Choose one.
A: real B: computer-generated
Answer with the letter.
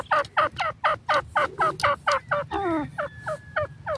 A